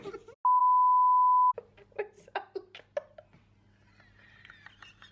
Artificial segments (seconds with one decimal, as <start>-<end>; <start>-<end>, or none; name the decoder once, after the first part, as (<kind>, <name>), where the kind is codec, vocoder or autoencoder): none